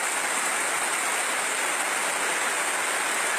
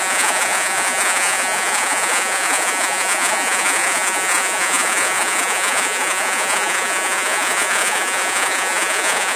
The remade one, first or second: second